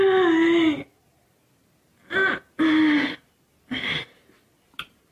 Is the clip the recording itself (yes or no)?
yes